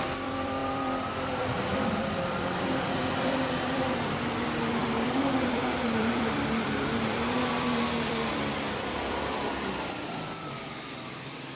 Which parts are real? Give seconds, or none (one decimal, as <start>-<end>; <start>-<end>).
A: none